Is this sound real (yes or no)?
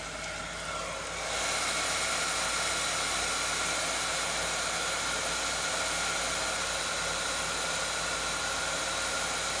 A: yes